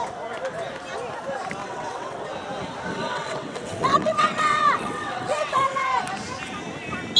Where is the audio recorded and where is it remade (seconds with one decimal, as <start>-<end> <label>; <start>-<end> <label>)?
0.0-1.6 recorded; 1.6-2.2 remade; 2.2-3.0 recorded; 3.0-6.0 remade; 6.0-7.2 recorded